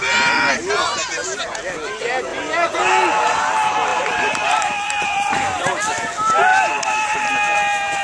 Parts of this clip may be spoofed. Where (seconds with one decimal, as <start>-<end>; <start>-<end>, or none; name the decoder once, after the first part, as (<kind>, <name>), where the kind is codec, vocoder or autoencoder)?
2.3-2.9 (vocoder, BigVGAN v2); 3.9-5.6; 6.5-7.3